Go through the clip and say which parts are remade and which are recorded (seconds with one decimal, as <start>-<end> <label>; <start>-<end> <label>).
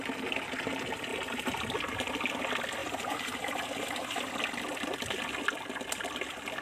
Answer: 0.0-1.1 recorded; 1.1-1.7 remade; 1.7-2.8 recorded; 2.8-4.2 remade; 4.2-6.6 recorded